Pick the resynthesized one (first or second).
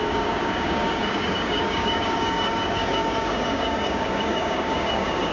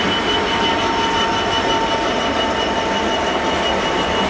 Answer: first